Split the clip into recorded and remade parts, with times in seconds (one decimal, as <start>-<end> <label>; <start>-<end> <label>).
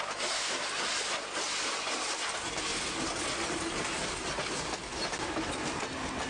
0.0-6.3 recorded